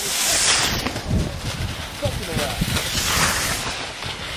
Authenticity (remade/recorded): recorded